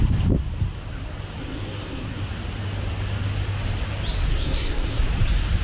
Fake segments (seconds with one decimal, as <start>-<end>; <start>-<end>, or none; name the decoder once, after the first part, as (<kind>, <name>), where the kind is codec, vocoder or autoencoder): 1.4-2.2 (codec, SNAC); 4.3-5.0